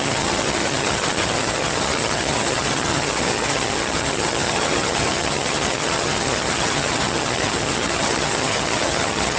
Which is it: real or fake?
fake